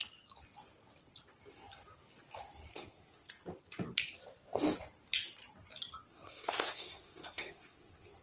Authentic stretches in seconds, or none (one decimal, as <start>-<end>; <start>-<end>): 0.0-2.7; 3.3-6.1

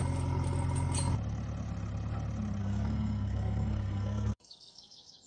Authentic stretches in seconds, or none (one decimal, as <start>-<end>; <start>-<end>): 0.0-2.6

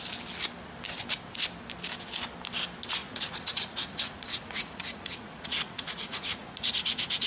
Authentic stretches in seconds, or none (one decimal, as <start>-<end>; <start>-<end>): 0.0-3.0

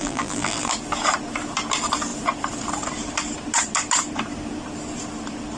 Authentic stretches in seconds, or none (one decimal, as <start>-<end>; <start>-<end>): 0.7-5.6